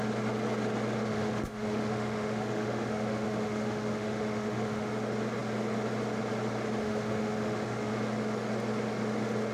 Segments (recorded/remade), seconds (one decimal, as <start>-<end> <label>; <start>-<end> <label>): 0.0-1.1 recorded; 1.1-4.9 remade; 4.9-6.8 recorded; 6.8-7.9 remade; 7.9-9.5 recorded